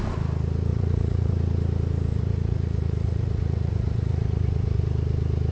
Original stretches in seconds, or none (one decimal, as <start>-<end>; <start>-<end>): 0.0-0.7; 1.3-2.1; 4.8-5.5